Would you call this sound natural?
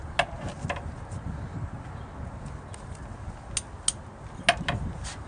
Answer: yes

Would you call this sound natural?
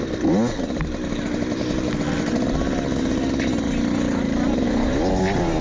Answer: yes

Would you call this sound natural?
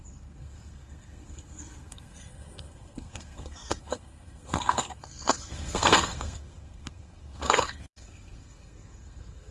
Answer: no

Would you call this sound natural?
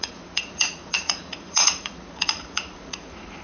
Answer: no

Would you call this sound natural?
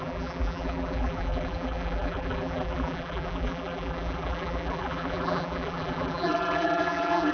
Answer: no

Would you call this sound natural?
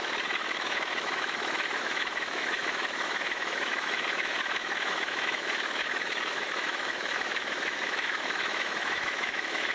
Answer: no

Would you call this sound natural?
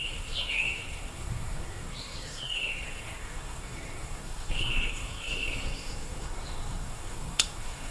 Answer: no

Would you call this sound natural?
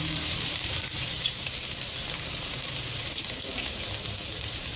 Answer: no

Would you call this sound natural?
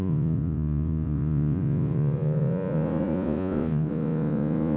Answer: no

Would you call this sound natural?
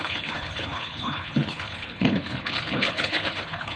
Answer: no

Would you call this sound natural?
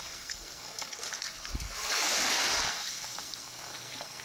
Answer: no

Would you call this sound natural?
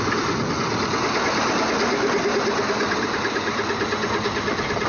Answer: yes